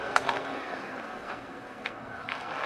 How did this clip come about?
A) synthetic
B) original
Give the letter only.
A